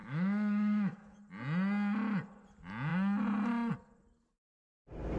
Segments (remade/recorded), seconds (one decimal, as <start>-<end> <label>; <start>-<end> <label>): 0.0-1.2 remade; 1.2-5.2 recorded